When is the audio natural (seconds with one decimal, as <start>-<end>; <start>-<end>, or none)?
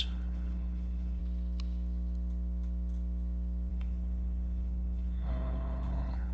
1.2-3.7